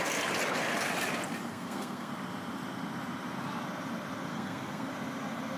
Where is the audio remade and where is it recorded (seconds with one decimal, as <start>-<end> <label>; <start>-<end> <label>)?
0.0-1.5 recorded; 1.5-2.1 remade; 2.1-4.3 recorded; 4.3-4.9 remade; 4.9-5.6 recorded